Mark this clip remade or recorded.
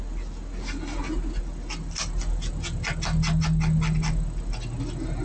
recorded